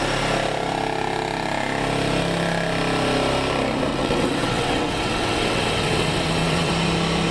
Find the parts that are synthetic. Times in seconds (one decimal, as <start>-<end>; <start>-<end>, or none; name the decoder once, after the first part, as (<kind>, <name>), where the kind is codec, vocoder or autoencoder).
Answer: 3.9-6.7 (vocoder, WaveNeXt)